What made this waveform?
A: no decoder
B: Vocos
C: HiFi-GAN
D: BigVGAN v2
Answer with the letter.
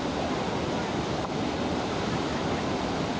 A